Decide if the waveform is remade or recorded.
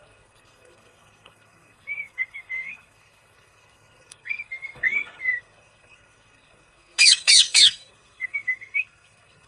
remade